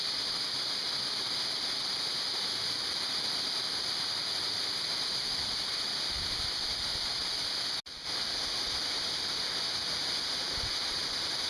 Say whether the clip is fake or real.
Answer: real